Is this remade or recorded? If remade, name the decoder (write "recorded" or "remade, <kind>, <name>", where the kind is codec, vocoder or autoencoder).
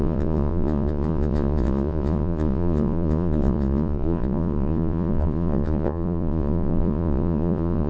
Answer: remade, vocoder, Vocos